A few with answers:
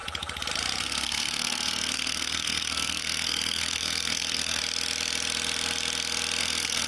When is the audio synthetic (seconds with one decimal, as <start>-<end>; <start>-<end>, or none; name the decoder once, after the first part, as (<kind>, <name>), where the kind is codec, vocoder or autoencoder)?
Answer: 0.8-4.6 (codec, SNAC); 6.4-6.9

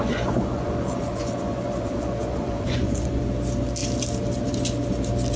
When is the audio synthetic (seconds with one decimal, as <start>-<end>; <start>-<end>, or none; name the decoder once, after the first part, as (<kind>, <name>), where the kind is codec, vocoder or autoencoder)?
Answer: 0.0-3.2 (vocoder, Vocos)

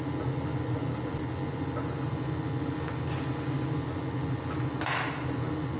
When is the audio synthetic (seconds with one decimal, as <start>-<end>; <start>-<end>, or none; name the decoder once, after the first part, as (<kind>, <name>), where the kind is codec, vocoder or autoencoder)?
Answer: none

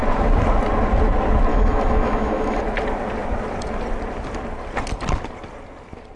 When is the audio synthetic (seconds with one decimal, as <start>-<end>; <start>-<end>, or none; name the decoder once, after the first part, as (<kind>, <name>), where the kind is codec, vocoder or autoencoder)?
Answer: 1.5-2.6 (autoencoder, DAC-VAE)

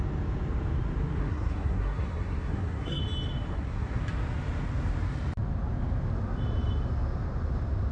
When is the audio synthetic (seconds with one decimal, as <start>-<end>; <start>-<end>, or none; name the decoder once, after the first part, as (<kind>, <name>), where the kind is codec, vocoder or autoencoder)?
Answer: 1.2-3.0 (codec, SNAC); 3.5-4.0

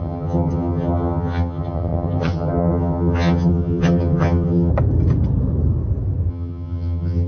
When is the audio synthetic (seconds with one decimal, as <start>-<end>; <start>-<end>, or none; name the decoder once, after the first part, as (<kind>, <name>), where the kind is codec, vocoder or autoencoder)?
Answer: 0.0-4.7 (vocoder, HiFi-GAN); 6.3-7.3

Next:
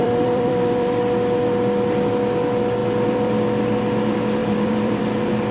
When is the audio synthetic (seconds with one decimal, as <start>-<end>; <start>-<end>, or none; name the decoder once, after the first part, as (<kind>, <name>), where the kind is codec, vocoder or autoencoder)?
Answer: 0.0-1.0 (vocoder, BigVGAN v2); 2.8-3.4; 4.4-5.0

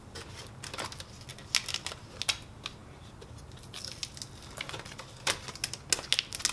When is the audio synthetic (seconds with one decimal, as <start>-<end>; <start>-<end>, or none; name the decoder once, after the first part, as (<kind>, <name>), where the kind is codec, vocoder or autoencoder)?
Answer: none